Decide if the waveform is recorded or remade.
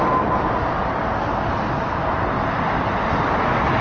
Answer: recorded